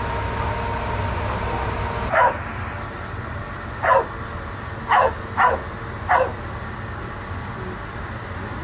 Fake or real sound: real